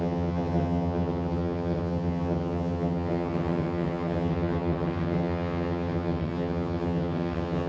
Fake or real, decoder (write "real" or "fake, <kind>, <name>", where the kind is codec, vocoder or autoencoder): fake, vocoder, HiFi-GAN